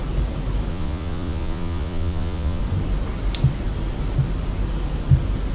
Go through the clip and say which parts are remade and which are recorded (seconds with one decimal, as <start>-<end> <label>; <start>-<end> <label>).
0.0-0.7 recorded; 0.7-2.6 remade; 2.6-5.5 recorded